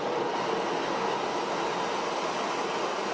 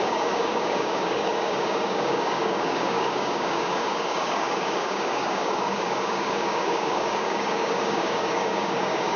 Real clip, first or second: first